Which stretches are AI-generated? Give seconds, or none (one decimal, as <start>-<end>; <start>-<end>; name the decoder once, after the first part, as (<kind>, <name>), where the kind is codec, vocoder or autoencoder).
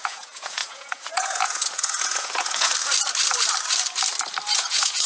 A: 0.0-2.7 (vocoder, Vocos); 4.5-5.1